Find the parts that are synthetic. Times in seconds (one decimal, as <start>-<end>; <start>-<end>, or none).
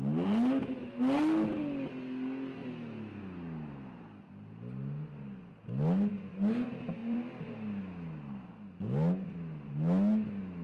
7.0-7.5